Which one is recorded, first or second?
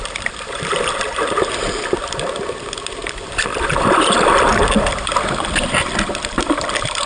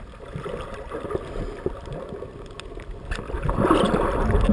second